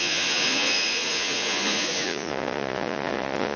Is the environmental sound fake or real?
fake